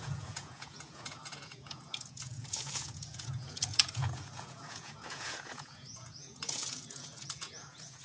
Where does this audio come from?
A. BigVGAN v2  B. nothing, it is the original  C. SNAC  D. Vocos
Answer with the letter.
D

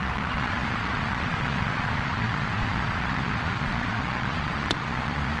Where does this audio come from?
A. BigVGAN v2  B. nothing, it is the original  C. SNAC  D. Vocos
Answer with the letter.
D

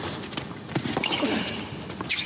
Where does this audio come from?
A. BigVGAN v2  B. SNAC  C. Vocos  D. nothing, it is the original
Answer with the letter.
D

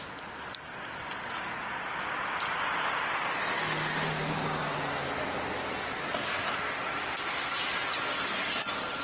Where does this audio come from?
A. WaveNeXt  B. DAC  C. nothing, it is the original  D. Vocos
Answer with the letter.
C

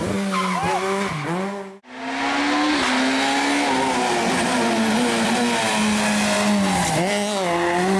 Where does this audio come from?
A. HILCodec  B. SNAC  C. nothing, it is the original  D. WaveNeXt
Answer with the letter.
C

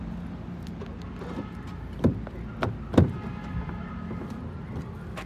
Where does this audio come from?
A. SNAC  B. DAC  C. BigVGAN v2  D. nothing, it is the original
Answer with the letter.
D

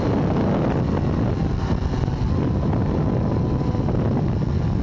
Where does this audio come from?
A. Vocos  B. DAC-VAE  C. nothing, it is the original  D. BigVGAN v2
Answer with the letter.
C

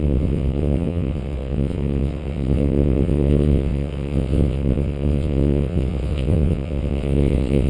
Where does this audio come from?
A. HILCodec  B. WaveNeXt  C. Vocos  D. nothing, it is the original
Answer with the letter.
B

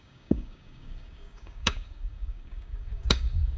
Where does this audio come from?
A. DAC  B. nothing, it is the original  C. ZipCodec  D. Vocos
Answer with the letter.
A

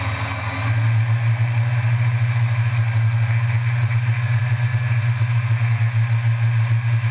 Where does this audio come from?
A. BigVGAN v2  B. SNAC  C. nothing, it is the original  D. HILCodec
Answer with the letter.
C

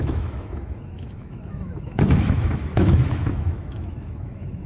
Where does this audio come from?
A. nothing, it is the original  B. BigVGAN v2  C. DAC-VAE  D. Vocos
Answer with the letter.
C